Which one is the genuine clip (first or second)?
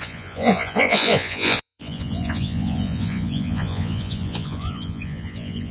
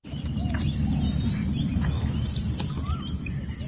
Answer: second